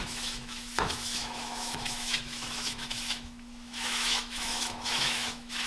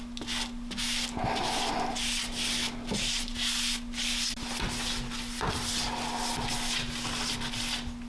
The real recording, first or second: second